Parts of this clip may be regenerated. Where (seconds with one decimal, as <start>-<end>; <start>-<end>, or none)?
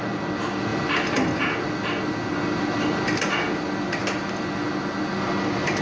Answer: none